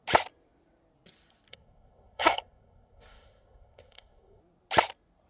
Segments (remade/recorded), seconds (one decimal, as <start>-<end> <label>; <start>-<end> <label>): 0.0-1.5 recorded; 1.5-4.4 remade; 4.4-5.3 recorded